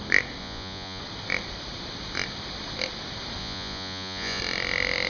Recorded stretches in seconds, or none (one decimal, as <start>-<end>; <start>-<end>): 0.0-0.4; 1.0-3.4; 4.4-5.1